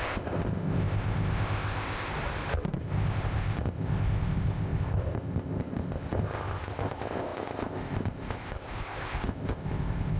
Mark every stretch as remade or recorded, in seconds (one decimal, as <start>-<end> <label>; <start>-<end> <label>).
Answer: 0.0-2.1 remade; 2.1-2.8 recorded; 2.8-10.2 remade